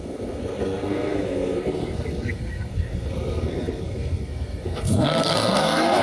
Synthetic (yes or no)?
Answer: yes